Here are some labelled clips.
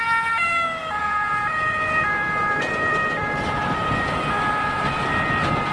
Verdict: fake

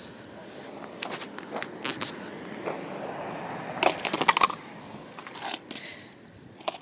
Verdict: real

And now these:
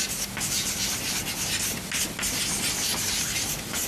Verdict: real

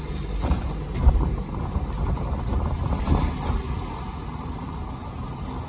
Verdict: real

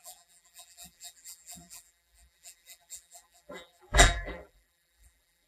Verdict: fake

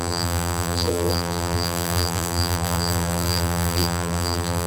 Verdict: fake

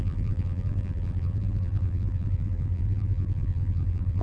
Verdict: fake